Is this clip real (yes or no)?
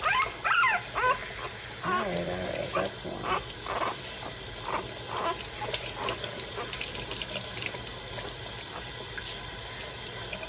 yes